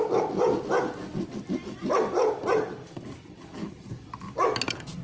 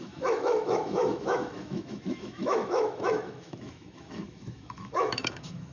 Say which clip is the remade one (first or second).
second